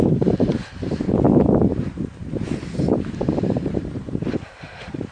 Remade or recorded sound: remade